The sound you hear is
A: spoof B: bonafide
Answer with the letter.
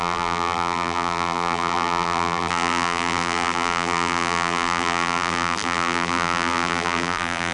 A